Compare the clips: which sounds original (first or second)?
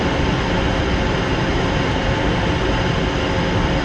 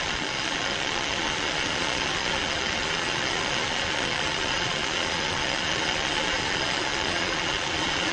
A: first